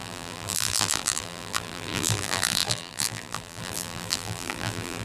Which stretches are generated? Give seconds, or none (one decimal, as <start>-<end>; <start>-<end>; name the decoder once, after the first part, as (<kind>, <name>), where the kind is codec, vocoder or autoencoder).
0.0-5.0 (vocoder, BigVGAN v2)